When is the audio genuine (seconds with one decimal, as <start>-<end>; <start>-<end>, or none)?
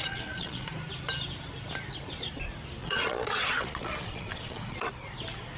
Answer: 0.7-2.8; 4.9-5.6